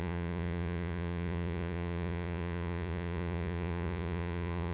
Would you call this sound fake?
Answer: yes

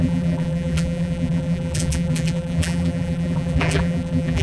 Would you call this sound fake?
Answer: yes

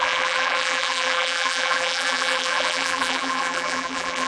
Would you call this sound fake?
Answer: yes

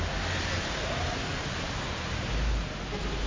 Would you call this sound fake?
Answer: no